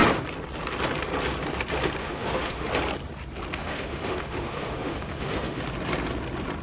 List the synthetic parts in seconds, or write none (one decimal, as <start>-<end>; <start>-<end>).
2.0-2.7; 3.6-5.6